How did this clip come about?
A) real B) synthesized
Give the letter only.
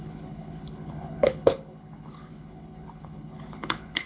B